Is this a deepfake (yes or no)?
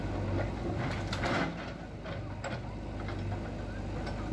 no